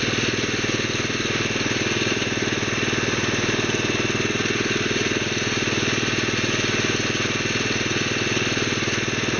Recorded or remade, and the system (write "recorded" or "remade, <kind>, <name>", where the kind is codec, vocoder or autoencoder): recorded